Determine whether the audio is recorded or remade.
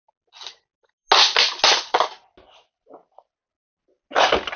recorded